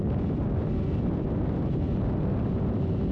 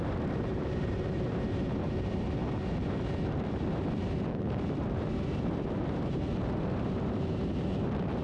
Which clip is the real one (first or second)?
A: first